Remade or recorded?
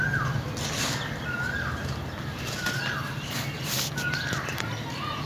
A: recorded